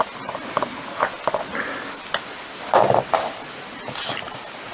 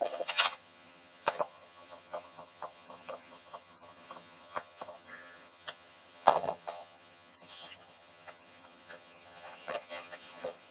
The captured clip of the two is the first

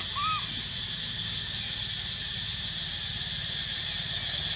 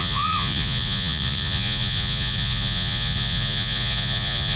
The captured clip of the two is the first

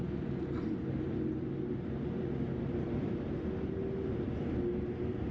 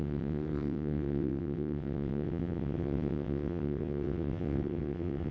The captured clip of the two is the first